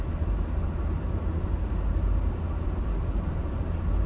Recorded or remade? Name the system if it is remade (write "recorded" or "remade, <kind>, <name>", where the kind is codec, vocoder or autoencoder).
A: recorded